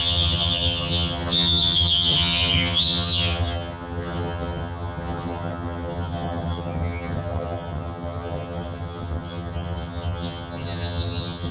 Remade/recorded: remade